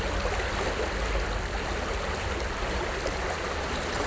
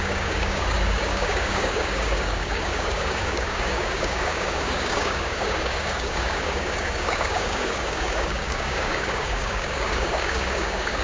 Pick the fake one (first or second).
second